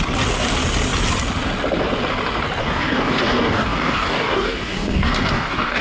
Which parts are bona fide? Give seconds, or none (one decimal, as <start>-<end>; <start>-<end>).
0.0-2.6